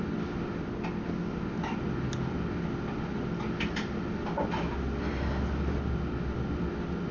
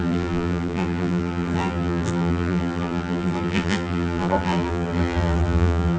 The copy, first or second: second